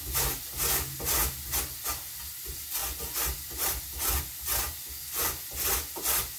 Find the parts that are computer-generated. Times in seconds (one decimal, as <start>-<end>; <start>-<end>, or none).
none